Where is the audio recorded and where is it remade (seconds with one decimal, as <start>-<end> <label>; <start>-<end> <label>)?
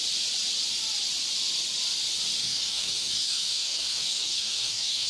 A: 0.0-2.4 recorded; 2.4-5.1 remade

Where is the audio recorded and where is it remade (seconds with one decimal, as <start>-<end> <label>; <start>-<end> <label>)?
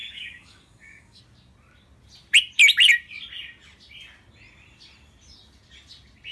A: 0.0-1.2 remade; 1.2-6.3 recorded